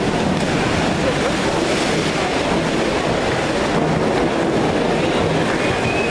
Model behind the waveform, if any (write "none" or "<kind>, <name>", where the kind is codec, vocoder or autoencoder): none